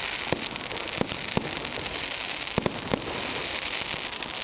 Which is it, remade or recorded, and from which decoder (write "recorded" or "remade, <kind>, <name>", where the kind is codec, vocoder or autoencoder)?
recorded